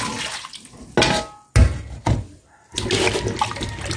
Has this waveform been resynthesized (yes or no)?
no